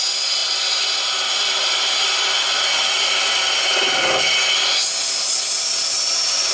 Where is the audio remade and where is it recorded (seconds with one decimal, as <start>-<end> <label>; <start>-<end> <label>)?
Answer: 0.0-6.5 recorded